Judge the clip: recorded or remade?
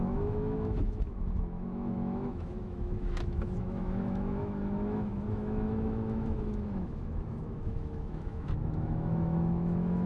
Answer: remade